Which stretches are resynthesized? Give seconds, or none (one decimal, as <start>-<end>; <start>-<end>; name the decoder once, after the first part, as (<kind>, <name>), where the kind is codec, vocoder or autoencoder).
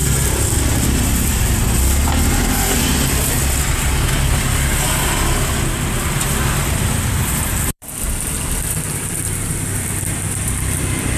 0.7-1.3 (vocoder, BigVGAN v2); 5.7-11.2